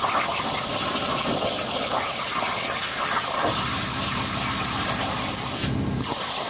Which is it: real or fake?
real